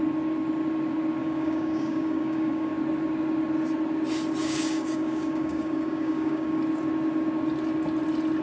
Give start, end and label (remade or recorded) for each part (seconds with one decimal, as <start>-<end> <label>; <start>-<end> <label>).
0.0-1.2 recorded; 1.2-2.7 remade; 2.7-4.4 recorded; 4.4-6.6 remade; 6.6-8.4 recorded